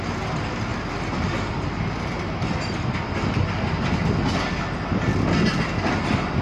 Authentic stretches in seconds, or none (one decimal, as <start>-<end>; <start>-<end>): 0.0-6.4